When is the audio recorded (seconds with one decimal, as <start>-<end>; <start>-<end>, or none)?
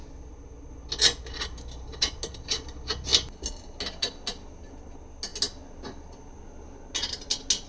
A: 0.0-7.7